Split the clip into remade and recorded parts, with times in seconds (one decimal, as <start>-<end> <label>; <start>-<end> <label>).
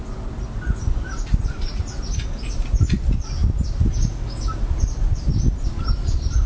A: 0.0-6.5 recorded